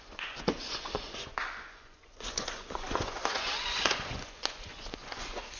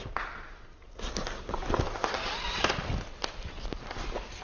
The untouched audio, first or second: second